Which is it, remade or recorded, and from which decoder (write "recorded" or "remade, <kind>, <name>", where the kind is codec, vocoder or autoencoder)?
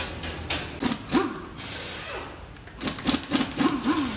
recorded